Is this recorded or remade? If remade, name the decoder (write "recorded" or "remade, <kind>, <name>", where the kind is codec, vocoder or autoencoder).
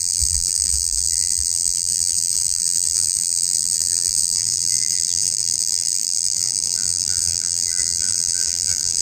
remade, vocoder, BigVGAN v2